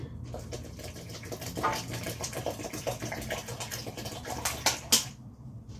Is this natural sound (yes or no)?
yes